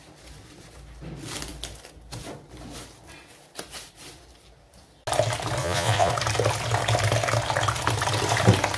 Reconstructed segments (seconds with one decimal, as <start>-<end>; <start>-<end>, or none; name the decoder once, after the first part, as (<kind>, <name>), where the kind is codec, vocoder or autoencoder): 5.6-6.1 (vocoder, Vocos)